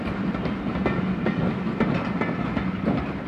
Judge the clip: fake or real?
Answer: real